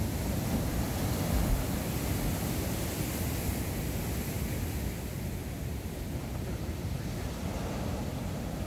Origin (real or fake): real